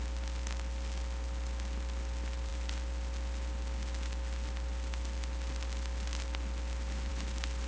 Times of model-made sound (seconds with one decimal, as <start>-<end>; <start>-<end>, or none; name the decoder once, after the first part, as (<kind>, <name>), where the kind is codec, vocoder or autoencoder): none